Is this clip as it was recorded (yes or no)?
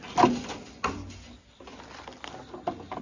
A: yes